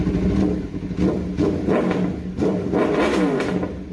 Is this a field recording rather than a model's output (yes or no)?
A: yes